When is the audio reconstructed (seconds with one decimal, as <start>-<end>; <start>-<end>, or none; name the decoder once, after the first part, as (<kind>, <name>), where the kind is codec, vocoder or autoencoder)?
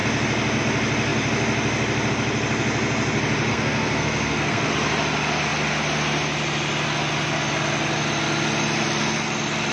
3.5-4.7 (codec, SNAC)